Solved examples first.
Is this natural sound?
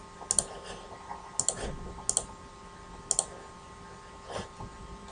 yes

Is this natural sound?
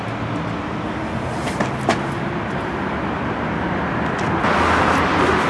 yes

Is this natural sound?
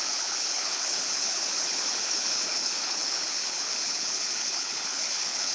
no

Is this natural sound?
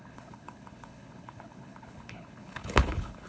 no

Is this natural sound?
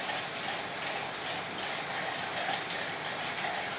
yes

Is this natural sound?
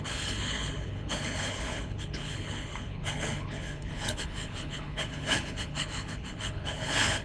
no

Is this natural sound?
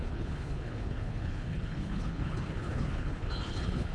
no